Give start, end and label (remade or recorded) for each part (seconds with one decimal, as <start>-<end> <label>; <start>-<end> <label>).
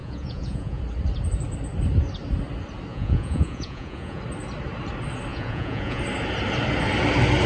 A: 0.0-0.8 remade; 0.8-2.9 recorded; 2.9-4.2 remade; 4.2-5.3 recorded; 5.3-6.0 remade; 6.0-7.5 recorded